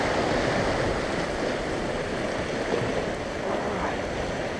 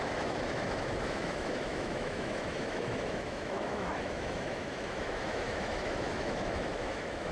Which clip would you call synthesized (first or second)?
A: second